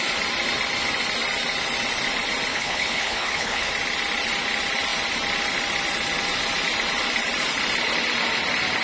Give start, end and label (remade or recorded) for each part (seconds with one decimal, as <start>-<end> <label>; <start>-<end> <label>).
0.0-2.5 recorded; 2.5-3.7 remade; 3.7-8.8 recorded